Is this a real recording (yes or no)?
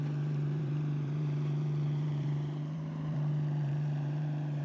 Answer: no